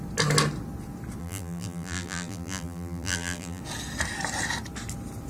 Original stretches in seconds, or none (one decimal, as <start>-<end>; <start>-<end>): 0.0-1.2; 3.6-5.3